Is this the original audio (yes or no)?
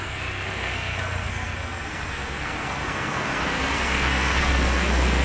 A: no